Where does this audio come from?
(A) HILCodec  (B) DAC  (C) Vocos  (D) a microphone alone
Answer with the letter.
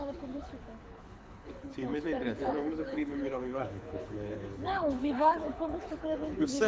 A